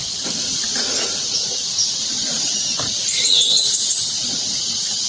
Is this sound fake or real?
real